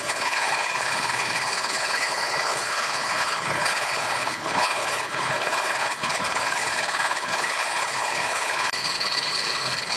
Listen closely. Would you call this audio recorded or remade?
remade